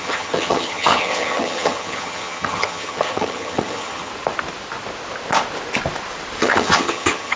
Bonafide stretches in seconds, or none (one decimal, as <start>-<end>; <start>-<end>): 4.1-6.4